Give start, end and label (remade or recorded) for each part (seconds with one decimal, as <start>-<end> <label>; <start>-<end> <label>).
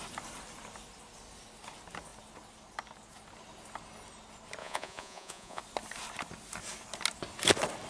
0.0-4.6 recorded; 4.6-5.6 remade; 5.6-7.9 recorded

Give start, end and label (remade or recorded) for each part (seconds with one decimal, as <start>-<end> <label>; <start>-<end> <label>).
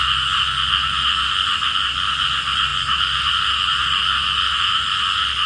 0.0-5.5 recorded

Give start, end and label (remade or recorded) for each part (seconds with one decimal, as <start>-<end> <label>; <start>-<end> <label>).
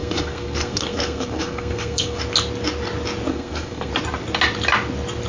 0.0-2.2 remade; 2.2-3.3 recorded; 3.3-3.9 remade; 3.9-5.3 recorded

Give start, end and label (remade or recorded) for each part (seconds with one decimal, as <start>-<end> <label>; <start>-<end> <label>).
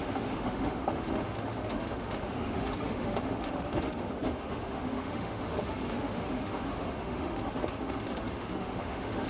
0.0-9.3 remade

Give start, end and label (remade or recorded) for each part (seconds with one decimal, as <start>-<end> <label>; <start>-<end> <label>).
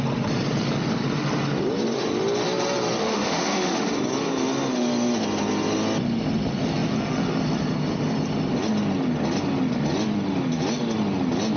0.0-3.0 recorded; 3.0-3.9 remade; 3.9-11.6 recorded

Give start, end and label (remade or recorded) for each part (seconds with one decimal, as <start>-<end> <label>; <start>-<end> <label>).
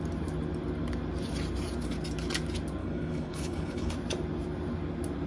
0.0-2.8 recorded; 2.8-3.9 remade; 3.9-5.3 recorded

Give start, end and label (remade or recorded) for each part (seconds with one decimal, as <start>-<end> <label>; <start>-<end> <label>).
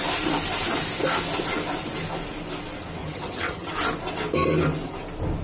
0.0-3.0 recorded; 3.0-3.7 remade; 3.7-5.4 recorded